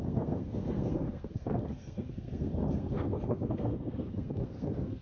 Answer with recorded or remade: remade